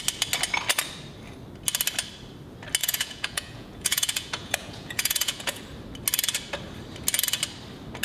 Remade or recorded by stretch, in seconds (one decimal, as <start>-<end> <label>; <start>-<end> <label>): 0.0-2.8 recorded; 2.8-5.6 remade; 5.6-8.0 recorded